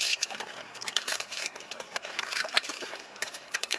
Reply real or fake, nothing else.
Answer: fake